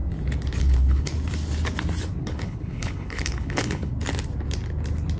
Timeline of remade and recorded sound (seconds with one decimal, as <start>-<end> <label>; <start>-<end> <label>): 0.0-0.6 recorded; 0.6-1.1 remade; 1.1-2.2 recorded; 2.2-3.9 remade; 3.9-5.2 recorded